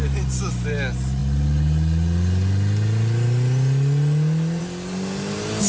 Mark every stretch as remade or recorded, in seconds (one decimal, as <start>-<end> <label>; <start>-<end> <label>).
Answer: 0.0-5.7 recorded